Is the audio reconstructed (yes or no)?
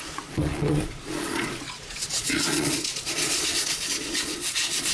yes